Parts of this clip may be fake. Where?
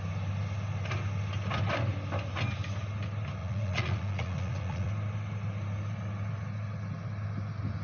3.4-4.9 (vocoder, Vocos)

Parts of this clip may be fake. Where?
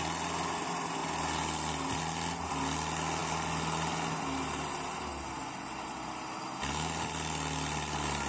none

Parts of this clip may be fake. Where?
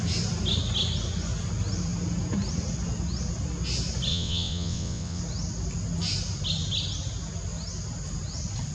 4.1-5.2 (vocoder, WaveNeXt)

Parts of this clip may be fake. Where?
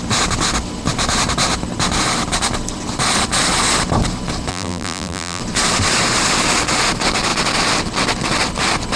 4.5-5.4 (vocoder, BigVGAN v2)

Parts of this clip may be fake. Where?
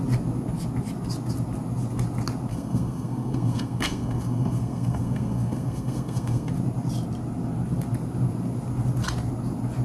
2.5-6.5 (codec, SNAC)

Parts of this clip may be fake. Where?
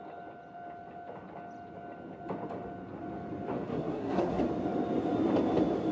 3.7-4.4 (codec, SNAC)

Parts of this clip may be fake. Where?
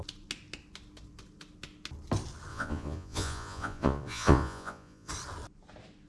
2.5-5.1 (vocoder, Vocos)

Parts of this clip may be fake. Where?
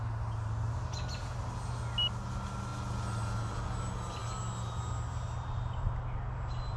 none